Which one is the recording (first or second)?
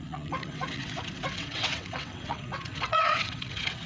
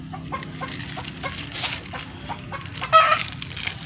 second